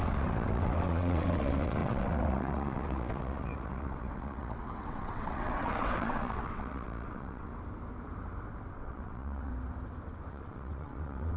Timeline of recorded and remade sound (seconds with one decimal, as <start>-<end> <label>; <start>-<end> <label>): 0.0-7.5 remade; 7.5-8.7 recorded; 8.7-9.5 remade; 9.5-10.3 recorded; 10.3-11.4 remade